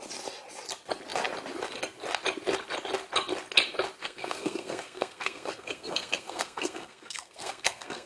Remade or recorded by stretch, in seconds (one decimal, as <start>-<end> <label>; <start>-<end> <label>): 0.0-4.0 recorded; 4.0-8.1 remade